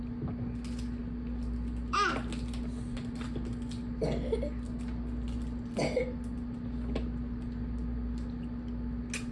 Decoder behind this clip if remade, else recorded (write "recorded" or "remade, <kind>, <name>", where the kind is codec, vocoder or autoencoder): recorded